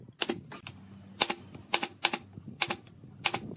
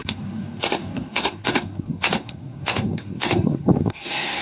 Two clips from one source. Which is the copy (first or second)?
second